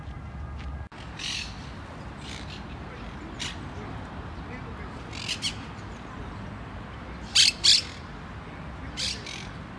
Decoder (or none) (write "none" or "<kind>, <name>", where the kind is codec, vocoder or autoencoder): none